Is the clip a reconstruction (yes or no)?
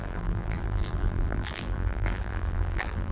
yes